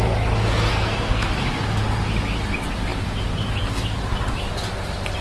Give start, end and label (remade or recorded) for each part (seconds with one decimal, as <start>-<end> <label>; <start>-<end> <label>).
0.0-0.7 recorded; 0.7-1.3 remade; 1.3-5.2 recorded